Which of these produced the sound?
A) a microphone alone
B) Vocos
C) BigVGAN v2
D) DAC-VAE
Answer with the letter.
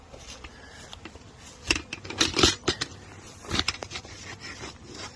C